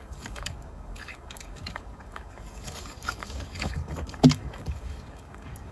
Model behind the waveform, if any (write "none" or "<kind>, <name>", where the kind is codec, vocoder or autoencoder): codec, DAC